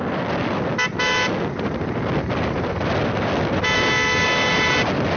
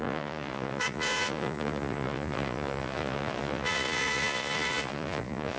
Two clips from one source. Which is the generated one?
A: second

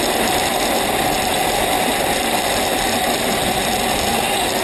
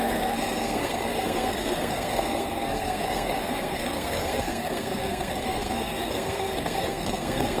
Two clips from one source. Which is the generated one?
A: second